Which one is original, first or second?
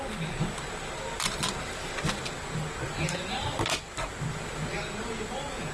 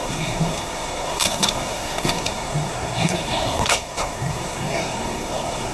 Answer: first